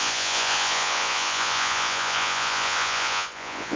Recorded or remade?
remade